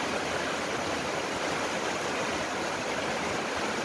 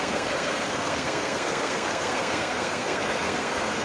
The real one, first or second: first